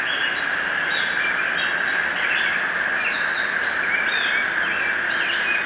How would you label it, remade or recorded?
recorded